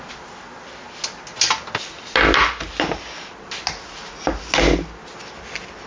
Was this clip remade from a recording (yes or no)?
no